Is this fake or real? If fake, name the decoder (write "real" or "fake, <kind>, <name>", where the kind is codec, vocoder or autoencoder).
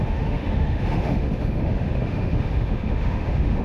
fake, autoencoder, DAC-VAE